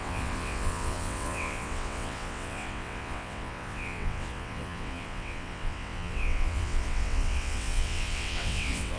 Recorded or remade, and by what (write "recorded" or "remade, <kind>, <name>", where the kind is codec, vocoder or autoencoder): remade, vocoder, WaveNeXt